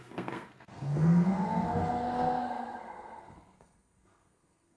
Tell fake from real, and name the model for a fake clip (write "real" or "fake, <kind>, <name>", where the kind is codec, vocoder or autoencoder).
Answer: fake, codec, SNAC